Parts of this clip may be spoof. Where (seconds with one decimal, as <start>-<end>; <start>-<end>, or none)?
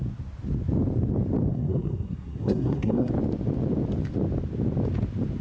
1.5-3.1